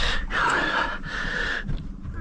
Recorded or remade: remade